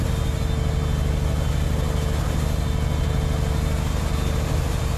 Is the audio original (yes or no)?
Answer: yes